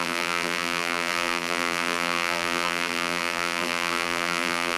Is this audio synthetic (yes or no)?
yes